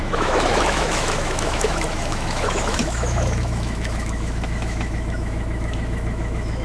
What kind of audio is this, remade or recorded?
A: remade